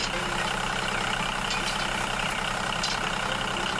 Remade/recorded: remade